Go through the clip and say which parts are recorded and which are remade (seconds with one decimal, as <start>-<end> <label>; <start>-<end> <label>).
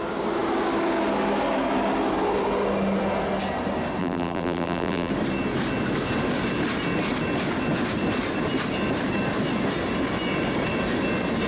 0.0-4.0 recorded; 4.0-5.1 remade; 5.1-11.5 recorded